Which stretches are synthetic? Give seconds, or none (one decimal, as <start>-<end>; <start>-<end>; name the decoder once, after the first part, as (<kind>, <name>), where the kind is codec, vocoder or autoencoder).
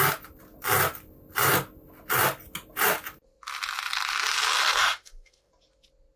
4.8-5.5 (autoencoder, DAC-VAE)